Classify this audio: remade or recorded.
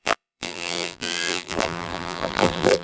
remade